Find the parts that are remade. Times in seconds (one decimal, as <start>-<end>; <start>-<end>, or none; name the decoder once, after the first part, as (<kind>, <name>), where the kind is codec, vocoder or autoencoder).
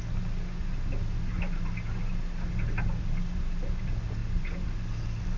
none